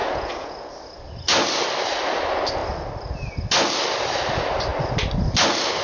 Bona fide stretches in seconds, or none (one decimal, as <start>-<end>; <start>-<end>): 0.7-5.8